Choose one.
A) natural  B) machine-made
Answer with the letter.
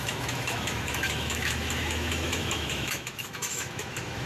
B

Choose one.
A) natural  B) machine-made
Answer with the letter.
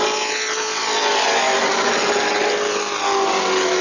A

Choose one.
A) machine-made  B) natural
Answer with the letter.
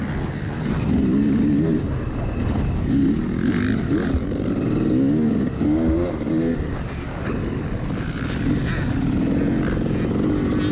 B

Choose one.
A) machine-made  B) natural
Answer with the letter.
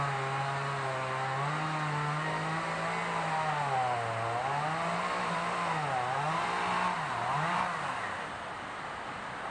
B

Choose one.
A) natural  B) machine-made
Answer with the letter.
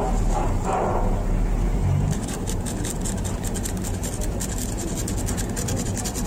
A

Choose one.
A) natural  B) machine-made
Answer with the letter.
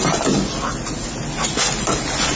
A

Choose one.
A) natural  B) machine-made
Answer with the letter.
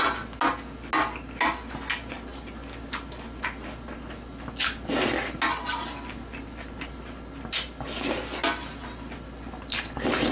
A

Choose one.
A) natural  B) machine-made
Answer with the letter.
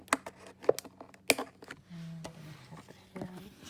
A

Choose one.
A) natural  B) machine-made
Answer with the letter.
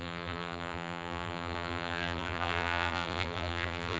B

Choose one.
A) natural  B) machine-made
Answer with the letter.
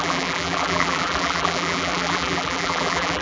B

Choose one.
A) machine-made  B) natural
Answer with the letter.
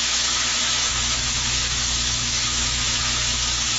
A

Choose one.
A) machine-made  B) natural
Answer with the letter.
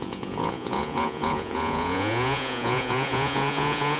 A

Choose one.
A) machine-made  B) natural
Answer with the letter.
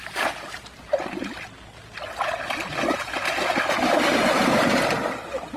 A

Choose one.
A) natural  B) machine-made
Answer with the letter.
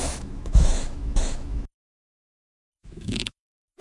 B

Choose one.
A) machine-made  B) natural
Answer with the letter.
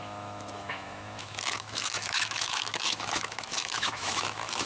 A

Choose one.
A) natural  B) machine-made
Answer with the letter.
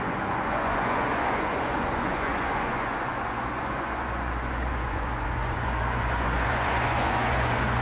B